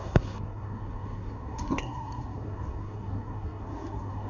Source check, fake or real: fake